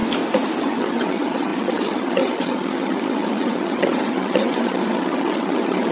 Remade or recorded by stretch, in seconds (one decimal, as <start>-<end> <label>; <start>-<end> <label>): 0.0-0.6 recorded; 0.6-5.9 remade